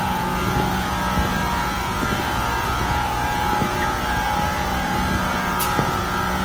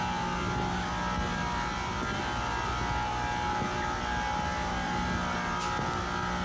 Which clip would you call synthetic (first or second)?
first